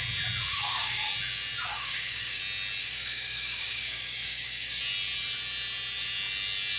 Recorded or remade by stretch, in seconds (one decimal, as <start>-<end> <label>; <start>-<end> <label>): 0.0-0.5 recorded; 0.5-1.1 remade; 1.1-1.7 recorded; 1.7-2.4 remade; 2.4-2.8 recorded; 2.8-4.8 remade; 4.8-6.8 recorded